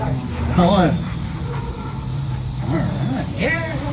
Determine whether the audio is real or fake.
fake